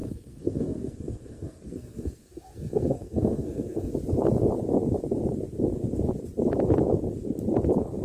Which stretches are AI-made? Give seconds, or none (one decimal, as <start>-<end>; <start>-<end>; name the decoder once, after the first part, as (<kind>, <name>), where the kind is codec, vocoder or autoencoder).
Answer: 0.0-3.9 (codec, SNAC)